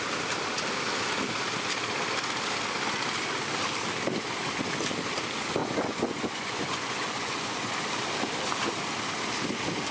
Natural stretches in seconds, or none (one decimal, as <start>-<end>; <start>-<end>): 0.0-5.6; 7.7-9.9